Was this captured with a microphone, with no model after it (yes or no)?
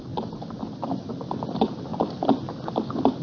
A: yes